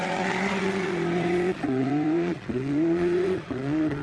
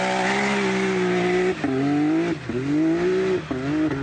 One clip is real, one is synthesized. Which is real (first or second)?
second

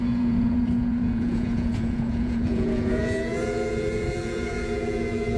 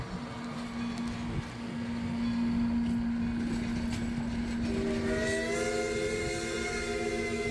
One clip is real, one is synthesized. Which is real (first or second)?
second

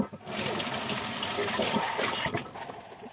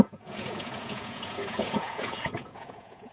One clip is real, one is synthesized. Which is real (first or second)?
first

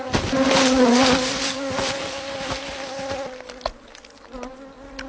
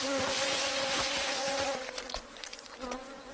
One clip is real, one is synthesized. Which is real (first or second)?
first